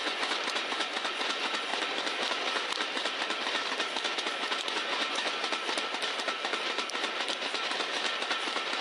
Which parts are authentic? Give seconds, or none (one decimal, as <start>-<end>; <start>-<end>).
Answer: 1.7-4.1; 5.4-8.8